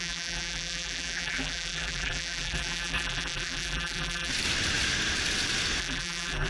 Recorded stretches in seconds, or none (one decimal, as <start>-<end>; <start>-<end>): 4.3-5.8